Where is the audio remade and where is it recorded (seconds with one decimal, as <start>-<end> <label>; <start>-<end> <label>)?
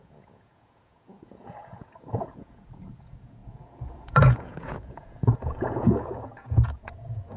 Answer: 0.0-7.4 remade